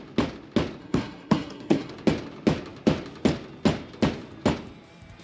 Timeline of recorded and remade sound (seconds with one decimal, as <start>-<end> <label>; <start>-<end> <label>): 0.0-0.8 recorded; 0.8-1.9 remade; 1.9-5.2 recorded